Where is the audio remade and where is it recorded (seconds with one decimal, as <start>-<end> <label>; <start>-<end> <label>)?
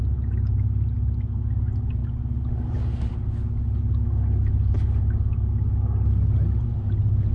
0.0-7.3 recorded